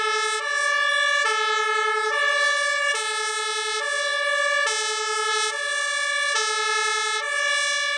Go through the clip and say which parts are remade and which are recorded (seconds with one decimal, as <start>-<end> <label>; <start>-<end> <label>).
0.0-8.0 recorded